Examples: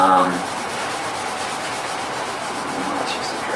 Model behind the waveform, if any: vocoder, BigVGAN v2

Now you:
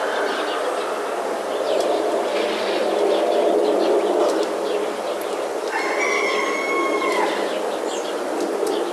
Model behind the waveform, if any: none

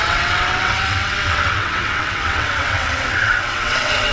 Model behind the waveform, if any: vocoder, WaveNeXt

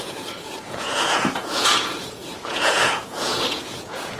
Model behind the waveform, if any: vocoder, Vocos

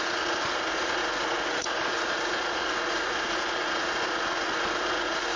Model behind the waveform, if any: vocoder, Vocos